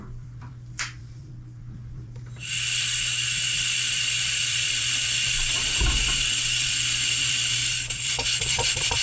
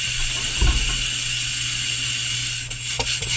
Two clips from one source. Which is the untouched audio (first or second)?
second